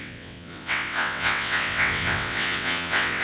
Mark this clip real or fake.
fake